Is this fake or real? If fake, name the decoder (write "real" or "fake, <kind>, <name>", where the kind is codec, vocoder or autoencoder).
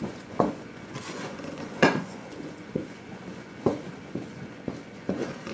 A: fake, vocoder, Vocos